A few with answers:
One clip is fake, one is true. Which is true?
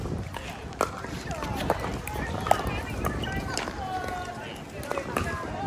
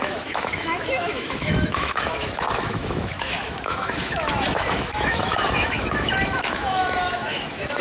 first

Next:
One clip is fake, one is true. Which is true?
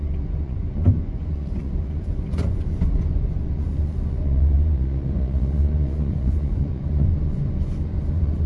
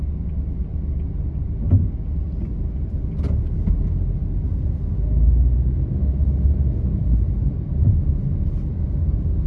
second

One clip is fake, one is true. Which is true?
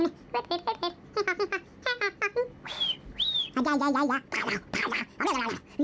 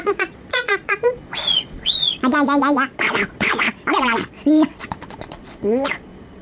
first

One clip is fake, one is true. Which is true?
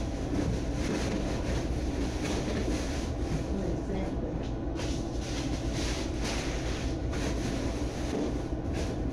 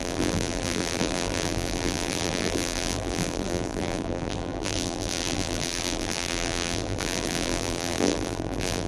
first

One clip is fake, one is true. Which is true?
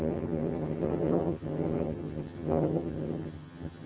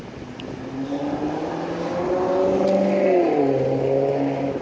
second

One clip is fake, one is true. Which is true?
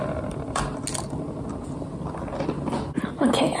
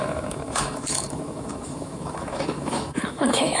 first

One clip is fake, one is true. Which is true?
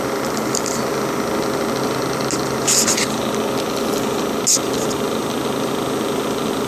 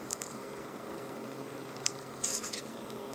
first